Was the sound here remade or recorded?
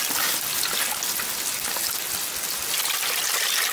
recorded